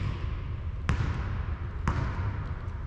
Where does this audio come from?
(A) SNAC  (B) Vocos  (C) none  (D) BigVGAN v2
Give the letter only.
C